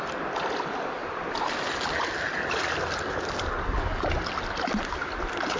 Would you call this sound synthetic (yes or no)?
no